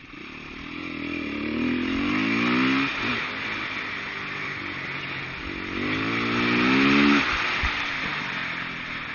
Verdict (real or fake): real